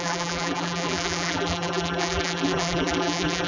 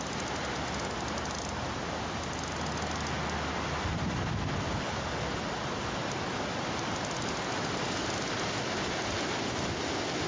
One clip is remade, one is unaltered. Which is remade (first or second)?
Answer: first